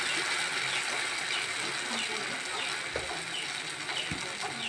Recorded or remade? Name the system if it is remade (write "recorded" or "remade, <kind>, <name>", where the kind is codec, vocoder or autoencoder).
recorded